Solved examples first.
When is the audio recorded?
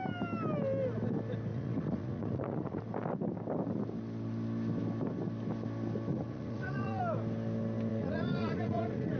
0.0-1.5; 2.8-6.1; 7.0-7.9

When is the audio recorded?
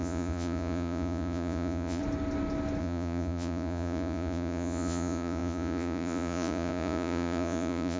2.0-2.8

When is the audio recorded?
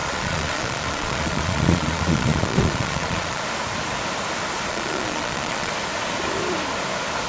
3.4-4.7; 5.7-7.3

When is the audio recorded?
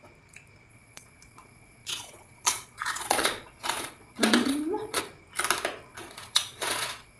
0.0-0.7; 5.0-5.9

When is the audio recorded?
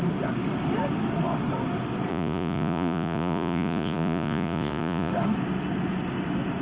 0.0-2.1; 5.1-6.6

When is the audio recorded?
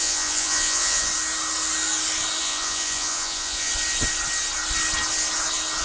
1.1-2.4; 3.7-5.8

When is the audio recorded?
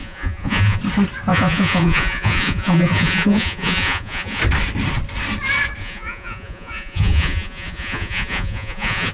0.8-1.3; 4.4-5.8